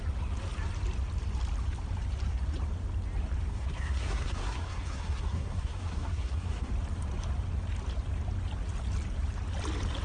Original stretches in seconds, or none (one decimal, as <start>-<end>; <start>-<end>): 0.0-3.5; 6.7-10.0